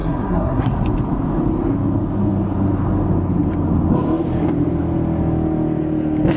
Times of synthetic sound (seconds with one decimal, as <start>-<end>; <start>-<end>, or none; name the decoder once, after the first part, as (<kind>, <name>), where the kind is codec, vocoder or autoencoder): 0.0-0.7 (codec, SNAC)